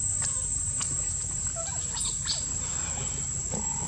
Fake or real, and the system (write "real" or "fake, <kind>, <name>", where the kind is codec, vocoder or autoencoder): fake, vocoder, BigVGAN v2